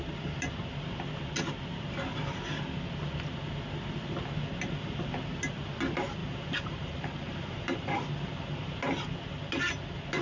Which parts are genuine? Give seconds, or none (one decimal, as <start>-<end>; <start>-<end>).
0.0-6.2; 8.4-10.2